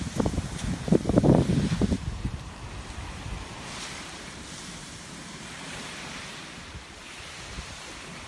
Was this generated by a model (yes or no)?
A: yes